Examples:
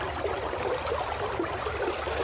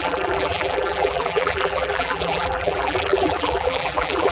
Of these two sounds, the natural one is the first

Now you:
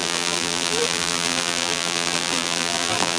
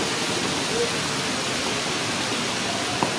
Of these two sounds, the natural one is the second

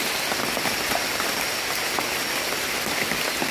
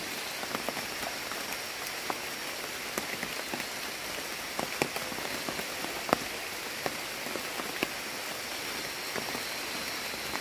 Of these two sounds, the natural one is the second